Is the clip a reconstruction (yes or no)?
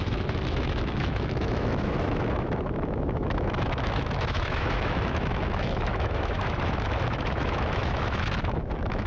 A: yes